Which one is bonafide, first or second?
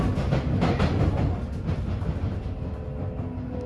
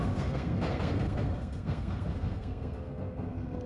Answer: first